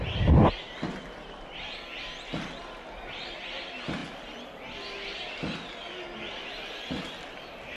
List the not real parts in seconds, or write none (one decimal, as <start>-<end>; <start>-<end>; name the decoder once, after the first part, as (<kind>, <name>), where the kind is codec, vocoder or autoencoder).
none